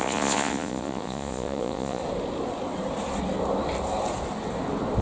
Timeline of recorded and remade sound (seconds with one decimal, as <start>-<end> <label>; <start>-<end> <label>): 0.0-2.0 remade; 2.0-5.0 recorded